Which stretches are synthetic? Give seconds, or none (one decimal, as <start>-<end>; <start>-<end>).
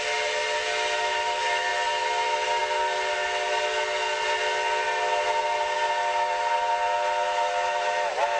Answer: none